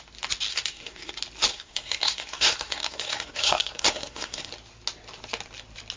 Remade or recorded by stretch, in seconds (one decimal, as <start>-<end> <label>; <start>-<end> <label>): 0.0-0.5 recorded; 0.5-1.1 remade; 1.1-1.5 recorded; 1.5-4.5 remade; 4.5-6.0 recorded